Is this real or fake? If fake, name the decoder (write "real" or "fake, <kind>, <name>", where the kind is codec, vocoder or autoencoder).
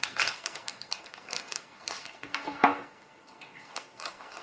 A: fake, codec, SNAC